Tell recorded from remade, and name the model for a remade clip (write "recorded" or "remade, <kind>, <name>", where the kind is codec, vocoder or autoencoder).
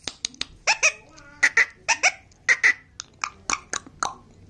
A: recorded